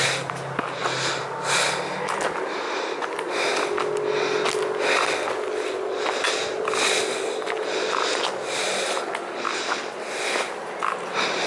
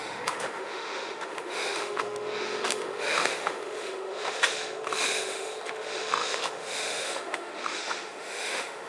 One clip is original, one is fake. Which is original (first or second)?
first